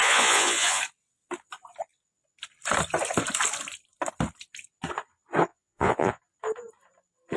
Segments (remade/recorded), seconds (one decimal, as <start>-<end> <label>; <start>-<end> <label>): 0.0-0.8 remade; 0.8-5.5 recorded; 5.5-6.2 remade; 6.2-7.4 recorded

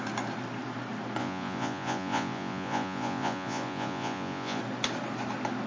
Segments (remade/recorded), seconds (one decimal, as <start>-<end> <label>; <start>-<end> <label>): 0.0-1.2 recorded; 1.2-4.6 remade; 4.6-5.7 recorded